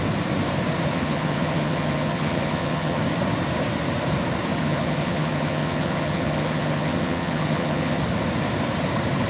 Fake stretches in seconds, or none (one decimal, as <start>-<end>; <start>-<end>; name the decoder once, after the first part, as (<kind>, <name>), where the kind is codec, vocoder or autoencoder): 0.9-3.0 (vocoder, HiFi-GAN); 4.6-8.0